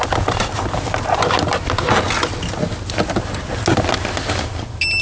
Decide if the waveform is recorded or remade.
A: recorded